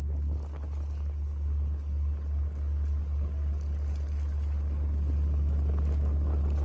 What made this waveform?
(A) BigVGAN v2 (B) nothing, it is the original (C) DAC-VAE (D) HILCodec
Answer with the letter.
B